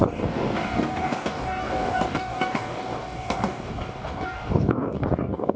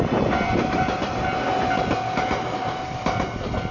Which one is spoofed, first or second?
first